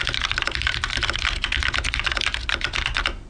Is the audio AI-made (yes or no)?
no